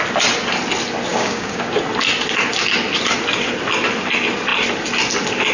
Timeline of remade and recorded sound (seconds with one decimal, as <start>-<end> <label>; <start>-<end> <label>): 0.0-1.1 recorded; 1.1-1.8 remade; 1.8-5.5 recorded